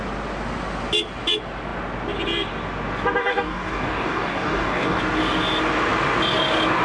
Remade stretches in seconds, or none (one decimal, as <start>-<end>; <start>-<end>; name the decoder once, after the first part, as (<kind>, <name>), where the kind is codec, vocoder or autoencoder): 3.2-5.0 (codec, DAC)